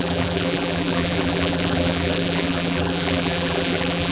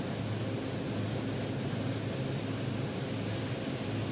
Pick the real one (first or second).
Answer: second